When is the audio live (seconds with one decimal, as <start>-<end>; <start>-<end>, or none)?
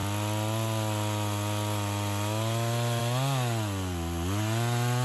0.0-5.0